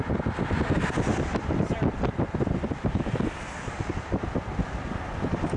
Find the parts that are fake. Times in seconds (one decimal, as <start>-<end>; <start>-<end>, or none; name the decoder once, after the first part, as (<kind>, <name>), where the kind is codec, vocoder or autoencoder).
none